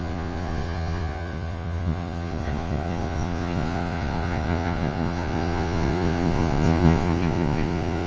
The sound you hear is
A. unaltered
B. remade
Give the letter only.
B